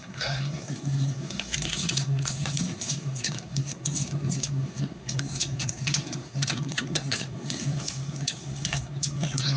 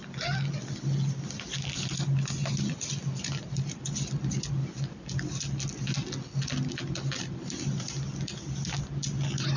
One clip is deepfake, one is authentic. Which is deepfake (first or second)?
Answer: first